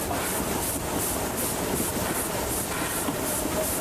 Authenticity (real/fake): real